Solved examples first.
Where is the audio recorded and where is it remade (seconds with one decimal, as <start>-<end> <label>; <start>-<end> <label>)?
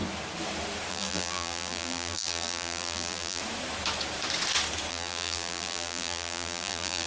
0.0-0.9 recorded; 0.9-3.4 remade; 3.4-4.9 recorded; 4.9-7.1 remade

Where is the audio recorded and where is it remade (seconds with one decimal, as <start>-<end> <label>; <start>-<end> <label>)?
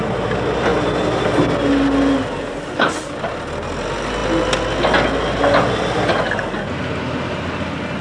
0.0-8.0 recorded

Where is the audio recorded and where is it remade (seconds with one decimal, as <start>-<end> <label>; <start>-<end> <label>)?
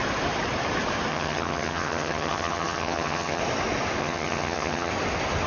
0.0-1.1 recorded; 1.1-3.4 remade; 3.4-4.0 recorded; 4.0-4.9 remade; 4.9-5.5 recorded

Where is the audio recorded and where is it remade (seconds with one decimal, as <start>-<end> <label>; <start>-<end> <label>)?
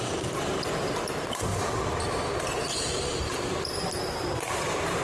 0.0-1.5 recorded; 1.5-4.5 remade; 4.5-5.0 recorded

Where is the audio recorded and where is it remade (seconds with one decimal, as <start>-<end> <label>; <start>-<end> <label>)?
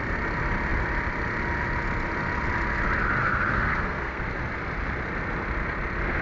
0.0-3.2 recorded; 3.2-4.2 remade; 4.2-6.2 recorded